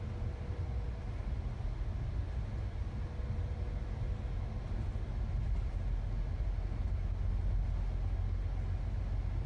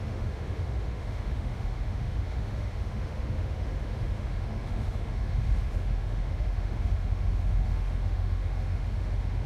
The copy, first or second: second